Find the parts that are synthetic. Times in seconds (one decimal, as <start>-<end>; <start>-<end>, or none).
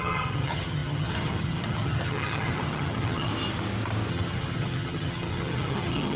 0.0-3.3; 4.1-6.2